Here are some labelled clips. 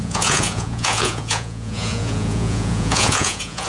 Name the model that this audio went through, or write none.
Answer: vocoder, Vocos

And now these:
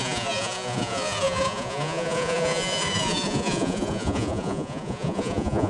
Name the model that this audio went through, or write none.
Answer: vocoder, Vocos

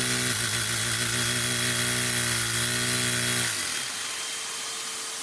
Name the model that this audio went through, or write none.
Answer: none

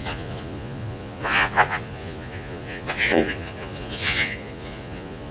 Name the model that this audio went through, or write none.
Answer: vocoder, Vocos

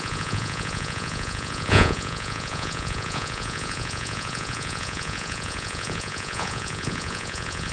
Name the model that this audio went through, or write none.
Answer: vocoder, Vocos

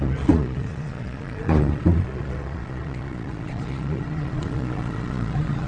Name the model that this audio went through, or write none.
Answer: vocoder, Vocos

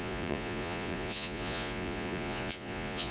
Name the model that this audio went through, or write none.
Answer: vocoder, Vocos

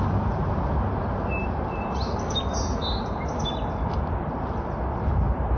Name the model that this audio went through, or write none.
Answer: none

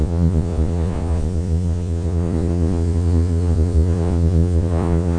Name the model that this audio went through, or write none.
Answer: vocoder, Vocos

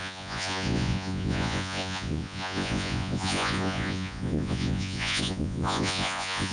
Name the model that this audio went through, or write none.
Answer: vocoder, Vocos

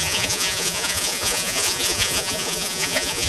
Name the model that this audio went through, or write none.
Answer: vocoder, Vocos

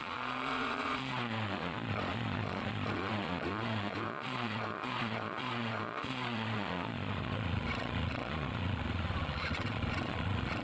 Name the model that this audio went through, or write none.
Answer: vocoder, Vocos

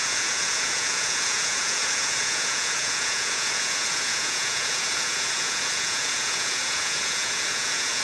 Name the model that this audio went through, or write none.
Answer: vocoder, Vocos